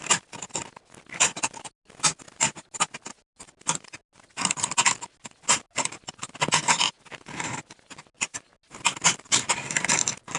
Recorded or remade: recorded